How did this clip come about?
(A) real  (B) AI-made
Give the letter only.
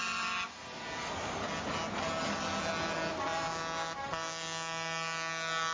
A